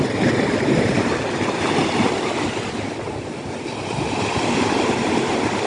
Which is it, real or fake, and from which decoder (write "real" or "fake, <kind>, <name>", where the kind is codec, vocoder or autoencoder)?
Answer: fake, vocoder, BigVGAN v2